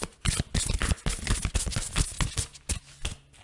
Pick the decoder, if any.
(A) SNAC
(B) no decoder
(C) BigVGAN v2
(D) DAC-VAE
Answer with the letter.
B